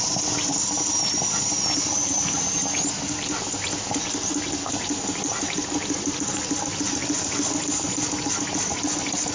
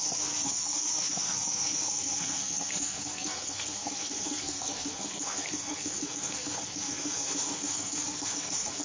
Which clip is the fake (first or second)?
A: second